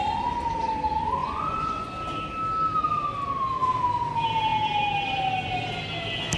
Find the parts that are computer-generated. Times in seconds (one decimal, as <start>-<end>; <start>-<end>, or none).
1.2-1.9